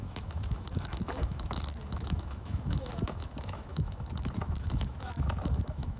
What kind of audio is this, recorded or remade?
remade